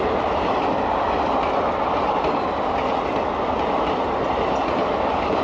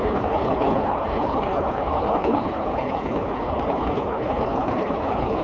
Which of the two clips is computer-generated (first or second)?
second